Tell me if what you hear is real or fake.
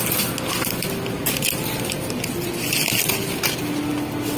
real